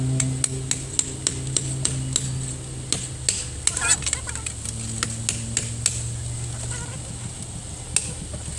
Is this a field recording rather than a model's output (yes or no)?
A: yes